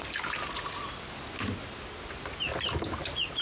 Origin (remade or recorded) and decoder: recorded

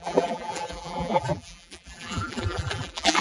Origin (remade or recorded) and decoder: remade, vocoder, BigVGAN v2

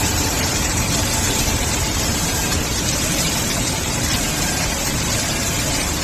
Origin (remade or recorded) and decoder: remade, vocoder, BigVGAN v2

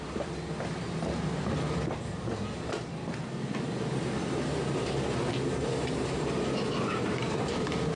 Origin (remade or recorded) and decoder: remade, vocoder, BigVGAN v2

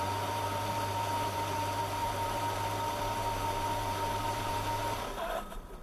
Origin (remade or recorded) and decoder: remade, vocoder, BigVGAN v2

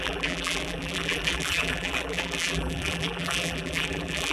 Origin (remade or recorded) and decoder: remade, vocoder, BigVGAN v2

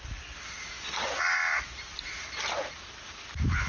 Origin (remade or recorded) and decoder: recorded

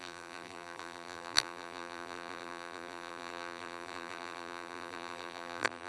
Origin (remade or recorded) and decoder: remade, vocoder, BigVGAN v2